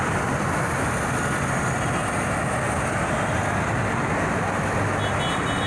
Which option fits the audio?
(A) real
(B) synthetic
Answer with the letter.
A